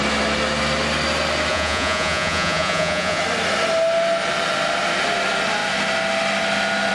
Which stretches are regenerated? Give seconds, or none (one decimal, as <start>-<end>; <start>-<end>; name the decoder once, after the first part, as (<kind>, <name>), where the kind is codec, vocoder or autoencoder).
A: 1.5-3.2 (vocoder, Vocos)